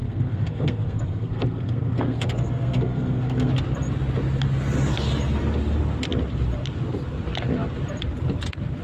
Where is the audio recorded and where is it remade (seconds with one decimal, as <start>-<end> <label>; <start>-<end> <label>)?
0.0-3.5 remade; 3.5-8.8 recorded